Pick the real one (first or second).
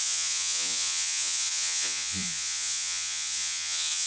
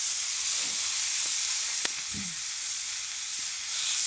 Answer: second